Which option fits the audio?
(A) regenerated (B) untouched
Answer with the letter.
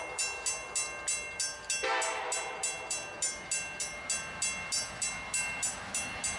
B